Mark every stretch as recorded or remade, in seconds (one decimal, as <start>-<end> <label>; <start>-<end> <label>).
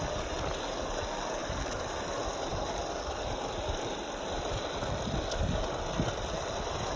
0.0-1.4 recorded; 1.4-2.0 remade; 2.0-2.5 recorded; 2.5-7.0 remade